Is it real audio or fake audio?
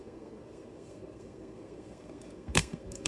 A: fake